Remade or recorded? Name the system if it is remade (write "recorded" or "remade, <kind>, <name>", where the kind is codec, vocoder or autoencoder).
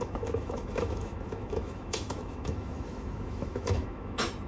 remade, autoencoder, DAC-VAE